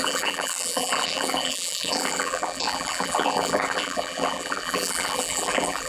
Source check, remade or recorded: remade